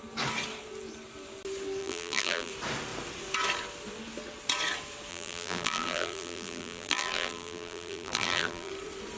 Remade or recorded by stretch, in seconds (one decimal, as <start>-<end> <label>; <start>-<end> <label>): 0.0-1.8 recorded; 1.8-2.5 remade; 2.5-5.1 recorded; 5.1-8.7 remade; 8.7-9.2 recorded